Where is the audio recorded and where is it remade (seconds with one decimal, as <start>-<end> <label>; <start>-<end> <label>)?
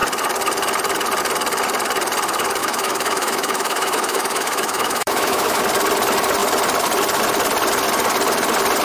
0.0-2.6 recorded; 2.6-5.6 remade; 5.6-8.8 recorded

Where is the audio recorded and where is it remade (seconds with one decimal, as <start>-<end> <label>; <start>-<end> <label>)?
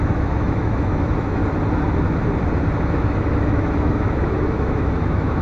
0.0-1.4 remade; 1.4-2.9 recorded; 2.9-5.4 remade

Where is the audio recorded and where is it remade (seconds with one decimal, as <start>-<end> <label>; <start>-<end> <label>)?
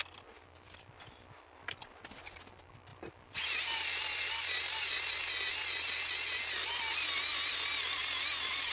0.0-8.7 recorded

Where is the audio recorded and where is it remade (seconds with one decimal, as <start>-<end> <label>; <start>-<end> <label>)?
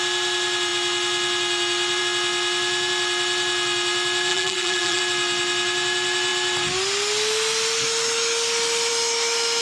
0.0-4.3 recorded; 4.3-5.0 remade; 5.0-9.6 recorded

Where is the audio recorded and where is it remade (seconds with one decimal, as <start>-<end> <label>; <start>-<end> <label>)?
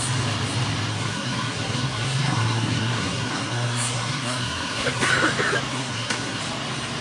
0.0-0.9 recorded; 0.9-5.1 remade; 5.1-5.7 recorded; 5.7-6.4 remade; 6.4-7.0 recorded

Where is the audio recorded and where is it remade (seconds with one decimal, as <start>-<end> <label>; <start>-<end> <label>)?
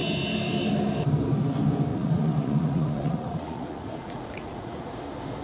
0.0-1.9 recorded; 1.9-4.9 remade; 4.9-5.4 recorded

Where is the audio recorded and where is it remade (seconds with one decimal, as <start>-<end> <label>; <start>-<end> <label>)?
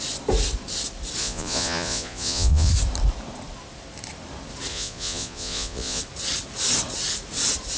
0.0-1.2 recorded; 1.2-2.7 remade; 2.7-4.7 recorded; 4.7-6.0 remade; 6.0-7.8 recorded